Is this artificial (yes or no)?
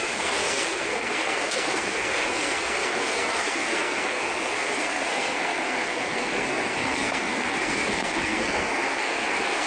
yes